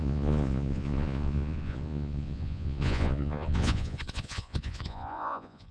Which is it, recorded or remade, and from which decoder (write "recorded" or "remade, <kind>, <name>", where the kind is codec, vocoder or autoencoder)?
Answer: remade, vocoder, Vocos